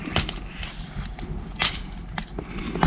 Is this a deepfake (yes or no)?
no